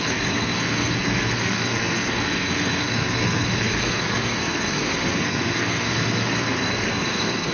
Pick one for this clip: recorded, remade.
remade